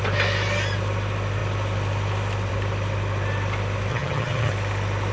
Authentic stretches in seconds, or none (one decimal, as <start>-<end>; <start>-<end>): 0.0-3.9; 4.5-5.1